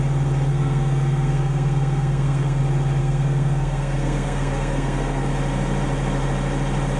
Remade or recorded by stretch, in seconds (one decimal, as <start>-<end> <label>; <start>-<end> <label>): 0.0-0.5 recorded; 0.5-2.6 remade; 2.6-3.0 recorded; 3.0-5.3 remade; 5.3-7.0 recorded